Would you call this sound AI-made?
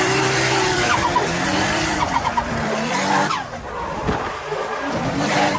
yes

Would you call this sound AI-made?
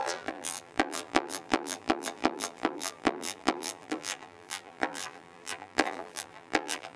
yes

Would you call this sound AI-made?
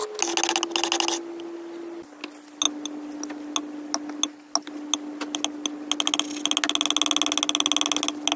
no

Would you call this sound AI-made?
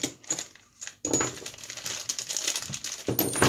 no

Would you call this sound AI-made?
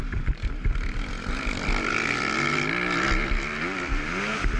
no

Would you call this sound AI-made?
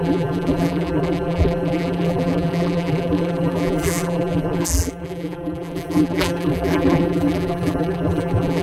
yes